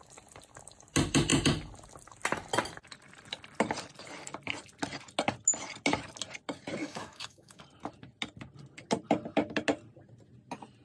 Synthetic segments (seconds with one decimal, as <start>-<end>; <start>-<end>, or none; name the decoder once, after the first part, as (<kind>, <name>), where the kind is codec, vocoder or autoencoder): 6.8-7.6 (autoencoder, DAC-VAE)